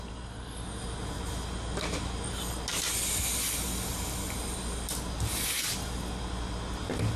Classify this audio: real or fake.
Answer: real